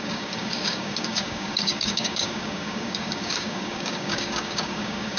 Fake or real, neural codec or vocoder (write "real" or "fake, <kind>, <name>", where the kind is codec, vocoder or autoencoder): fake, codec, DAC